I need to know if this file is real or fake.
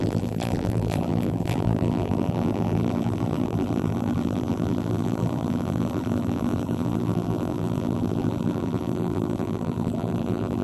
fake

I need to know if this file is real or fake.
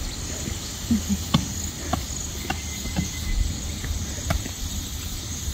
real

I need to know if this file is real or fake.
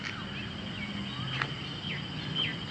real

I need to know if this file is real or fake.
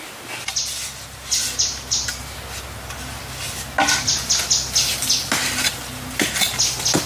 real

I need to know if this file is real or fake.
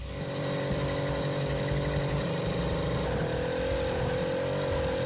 fake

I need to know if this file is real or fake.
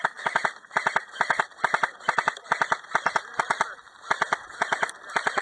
fake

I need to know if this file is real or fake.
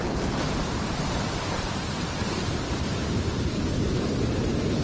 fake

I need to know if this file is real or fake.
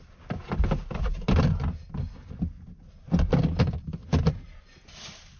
real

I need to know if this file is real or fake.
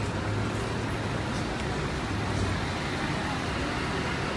real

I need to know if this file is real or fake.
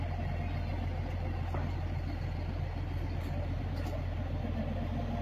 real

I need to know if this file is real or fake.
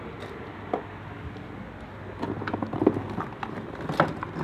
real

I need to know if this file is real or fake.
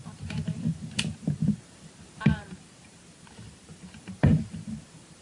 fake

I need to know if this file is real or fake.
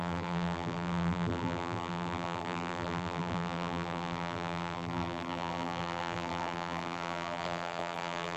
fake